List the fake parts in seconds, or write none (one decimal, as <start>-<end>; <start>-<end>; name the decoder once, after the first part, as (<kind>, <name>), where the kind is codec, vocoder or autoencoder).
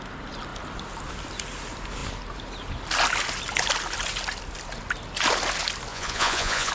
5.9-6.7 (vocoder, Vocos)